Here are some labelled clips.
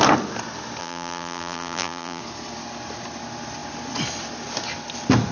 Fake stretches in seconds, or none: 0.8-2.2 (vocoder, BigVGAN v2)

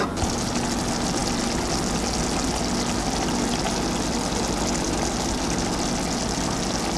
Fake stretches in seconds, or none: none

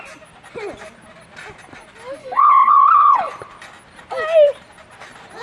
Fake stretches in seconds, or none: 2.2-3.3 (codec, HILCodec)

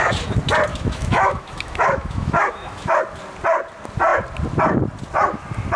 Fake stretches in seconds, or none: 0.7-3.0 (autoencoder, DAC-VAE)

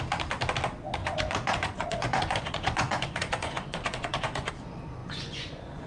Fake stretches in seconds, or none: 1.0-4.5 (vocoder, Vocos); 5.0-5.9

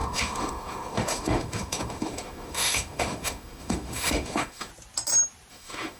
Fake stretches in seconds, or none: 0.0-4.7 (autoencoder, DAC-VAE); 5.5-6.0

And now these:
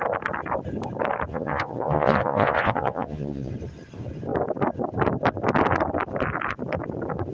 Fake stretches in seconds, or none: 1.3-3.5 (vocoder, Vocos)

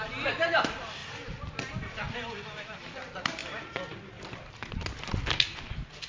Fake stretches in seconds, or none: 0.0-1.0 (vocoder, BigVGAN v2); 2.1-3.4; 5.3-6.1